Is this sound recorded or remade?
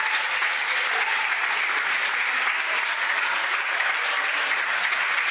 recorded